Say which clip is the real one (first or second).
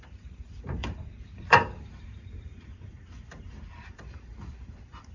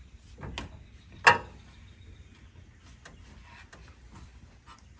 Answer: second